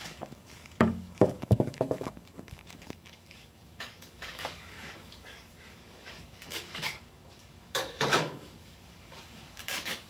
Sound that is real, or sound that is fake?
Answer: fake